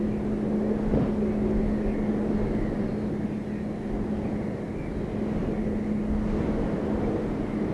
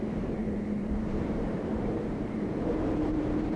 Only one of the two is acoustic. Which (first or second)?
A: first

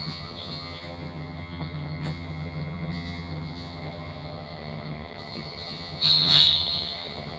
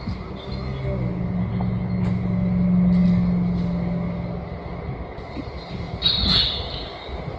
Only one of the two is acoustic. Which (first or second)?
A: second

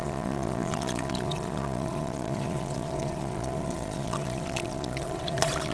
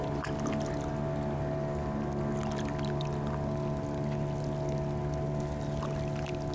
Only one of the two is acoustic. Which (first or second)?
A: second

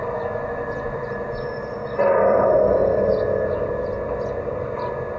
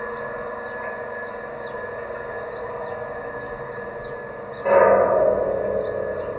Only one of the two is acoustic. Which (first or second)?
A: second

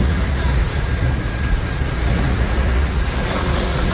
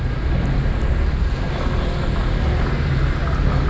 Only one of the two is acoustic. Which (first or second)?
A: second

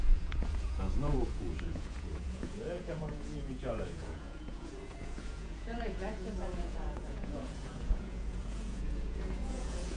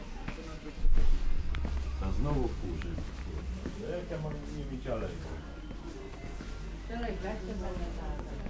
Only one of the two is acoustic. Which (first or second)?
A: second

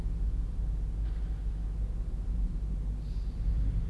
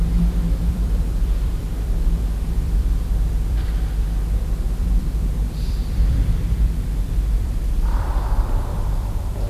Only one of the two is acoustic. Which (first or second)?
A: first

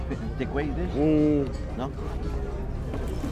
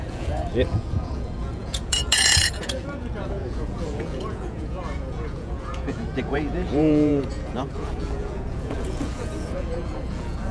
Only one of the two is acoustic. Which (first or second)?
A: first